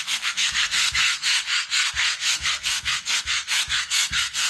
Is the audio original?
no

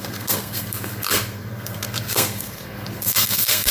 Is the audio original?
no